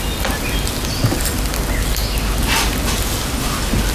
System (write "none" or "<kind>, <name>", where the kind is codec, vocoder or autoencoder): none